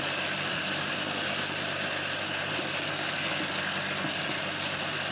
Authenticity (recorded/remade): recorded